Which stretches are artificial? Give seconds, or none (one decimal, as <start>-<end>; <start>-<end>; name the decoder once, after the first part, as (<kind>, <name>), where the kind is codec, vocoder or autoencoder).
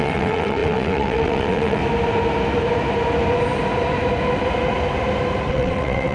0.0-1.8 (vocoder, WaveNeXt); 5.5-6.1